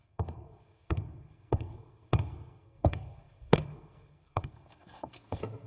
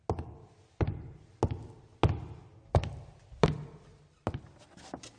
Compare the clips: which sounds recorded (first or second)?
second